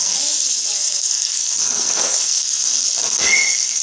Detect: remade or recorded remade